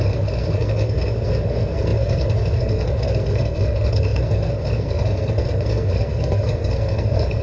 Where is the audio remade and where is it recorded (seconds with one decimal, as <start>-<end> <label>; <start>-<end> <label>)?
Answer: 0.0-7.4 remade

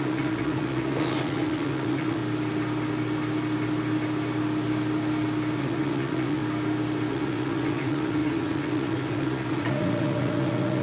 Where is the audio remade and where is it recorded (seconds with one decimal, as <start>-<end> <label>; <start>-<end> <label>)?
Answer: 0.0-2.2 remade; 2.2-5.6 recorded; 5.6-6.4 remade; 6.4-7.1 recorded; 7.1-10.8 remade

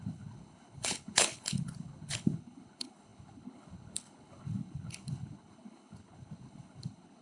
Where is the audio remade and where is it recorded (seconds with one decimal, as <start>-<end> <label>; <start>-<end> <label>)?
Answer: 0.0-7.2 remade

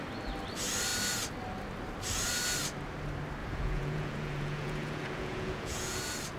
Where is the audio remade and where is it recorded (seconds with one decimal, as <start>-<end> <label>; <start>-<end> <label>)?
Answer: 0.0-3.4 recorded; 3.4-6.0 remade; 6.0-6.4 recorded